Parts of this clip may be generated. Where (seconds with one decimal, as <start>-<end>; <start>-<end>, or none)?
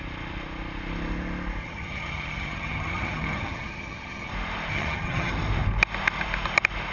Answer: 1.6-4.3; 4.7-5.3